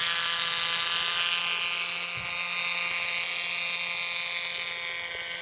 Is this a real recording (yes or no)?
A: yes